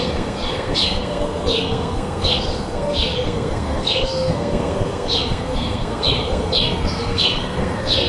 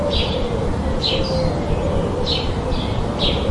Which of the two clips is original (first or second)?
second